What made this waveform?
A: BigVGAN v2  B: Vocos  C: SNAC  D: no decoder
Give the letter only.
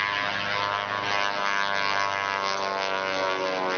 D